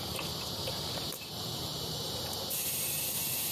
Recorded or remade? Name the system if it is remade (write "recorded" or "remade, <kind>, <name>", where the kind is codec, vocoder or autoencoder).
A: remade, vocoder, BigVGAN v2